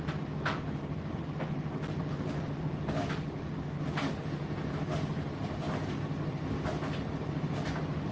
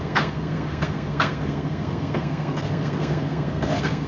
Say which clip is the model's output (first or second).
second